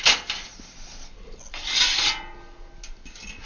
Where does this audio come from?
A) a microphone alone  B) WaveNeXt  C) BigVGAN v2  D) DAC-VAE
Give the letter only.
A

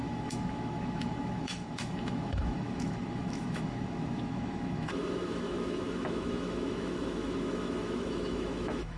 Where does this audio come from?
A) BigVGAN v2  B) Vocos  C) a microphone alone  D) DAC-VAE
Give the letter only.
D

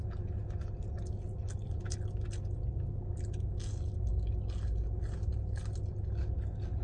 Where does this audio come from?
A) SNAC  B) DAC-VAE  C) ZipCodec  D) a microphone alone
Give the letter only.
D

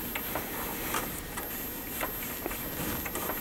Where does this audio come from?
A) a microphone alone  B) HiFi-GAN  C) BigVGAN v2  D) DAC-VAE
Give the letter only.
A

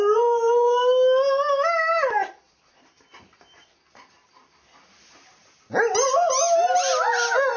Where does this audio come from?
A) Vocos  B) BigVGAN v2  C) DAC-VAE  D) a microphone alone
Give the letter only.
D